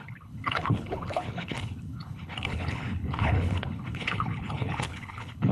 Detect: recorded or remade remade